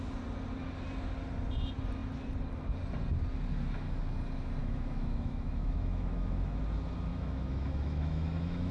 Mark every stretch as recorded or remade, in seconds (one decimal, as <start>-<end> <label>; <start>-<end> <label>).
0.0-4.6 recorded; 4.6-6.6 remade; 6.6-7.1 recorded; 7.1-8.7 remade

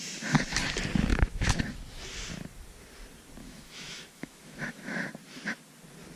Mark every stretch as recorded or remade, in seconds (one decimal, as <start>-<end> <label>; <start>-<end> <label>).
0.0-1.1 recorded; 1.1-1.6 remade; 1.6-3.4 recorded; 3.4-5.0 remade; 5.0-6.2 recorded

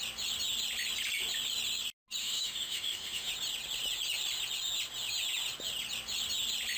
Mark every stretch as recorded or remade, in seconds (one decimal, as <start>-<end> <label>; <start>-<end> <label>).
0.0-2.2 recorded; 2.2-3.3 remade; 3.3-6.8 recorded

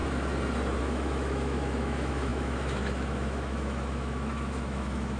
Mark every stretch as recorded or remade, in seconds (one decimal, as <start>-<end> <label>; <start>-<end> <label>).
0.0-0.8 recorded; 0.8-5.2 remade

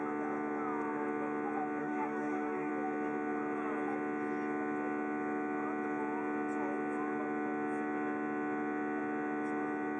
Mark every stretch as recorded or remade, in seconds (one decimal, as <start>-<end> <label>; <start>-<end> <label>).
0.0-1.8 recorded; 1.8-2.7 remade; 2.7-10.0 recorded